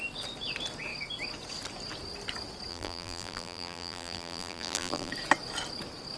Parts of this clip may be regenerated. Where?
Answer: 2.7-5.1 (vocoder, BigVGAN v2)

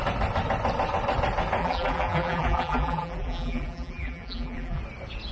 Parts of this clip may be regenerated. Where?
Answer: 1.6-4.8 (vocoder, BigVGAN v2)

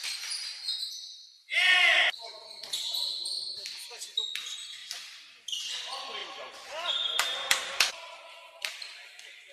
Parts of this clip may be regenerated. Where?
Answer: 2.6-3.2 (vocoder, BigVGAN v2); 6.2-7.9

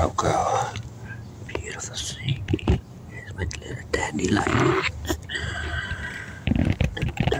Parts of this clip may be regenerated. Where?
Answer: 0.0-7.4 (vocoder, BigVGAN v2)

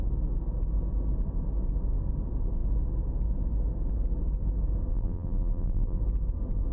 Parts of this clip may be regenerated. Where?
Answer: 4.9-6.0 (vocoder, BigVGAN v2)

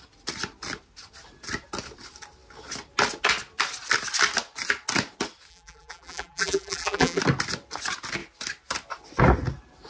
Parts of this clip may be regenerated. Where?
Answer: 5.5-7.2 (vocoder, BigVGAN v2)